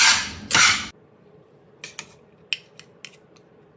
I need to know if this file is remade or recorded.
recorded